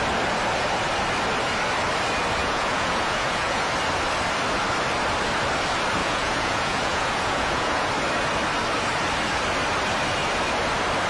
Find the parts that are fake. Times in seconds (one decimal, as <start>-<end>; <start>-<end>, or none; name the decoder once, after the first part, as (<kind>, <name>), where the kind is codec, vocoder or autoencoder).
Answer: 2.4-3.7 (vocoder, Vocos); 6.0-7.9

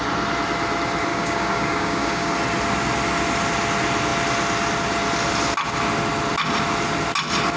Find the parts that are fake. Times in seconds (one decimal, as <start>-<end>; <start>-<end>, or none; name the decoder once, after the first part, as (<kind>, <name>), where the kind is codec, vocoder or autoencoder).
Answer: 1.1-2.3 (codec, DAC)

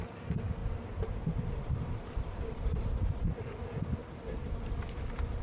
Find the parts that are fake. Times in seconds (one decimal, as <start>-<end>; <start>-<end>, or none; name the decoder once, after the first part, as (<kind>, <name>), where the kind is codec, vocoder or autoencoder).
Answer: 0.6-2.9 (vocoder, BigVGAN v2)